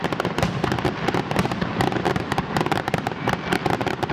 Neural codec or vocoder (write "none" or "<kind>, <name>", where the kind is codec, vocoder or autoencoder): none